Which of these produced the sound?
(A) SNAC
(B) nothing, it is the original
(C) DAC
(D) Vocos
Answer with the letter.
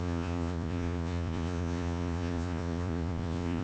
D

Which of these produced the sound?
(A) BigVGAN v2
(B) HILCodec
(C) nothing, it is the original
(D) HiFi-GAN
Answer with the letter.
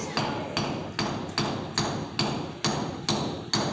C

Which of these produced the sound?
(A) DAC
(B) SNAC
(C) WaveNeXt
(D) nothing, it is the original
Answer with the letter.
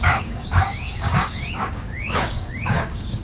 A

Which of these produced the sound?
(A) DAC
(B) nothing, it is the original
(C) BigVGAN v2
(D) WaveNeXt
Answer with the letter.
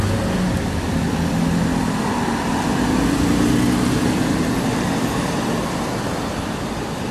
B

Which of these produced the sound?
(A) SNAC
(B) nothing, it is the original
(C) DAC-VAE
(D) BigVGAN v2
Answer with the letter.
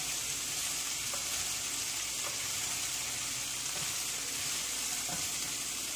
D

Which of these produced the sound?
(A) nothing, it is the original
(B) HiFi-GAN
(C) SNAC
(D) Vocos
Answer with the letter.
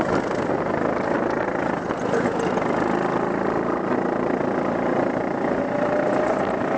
A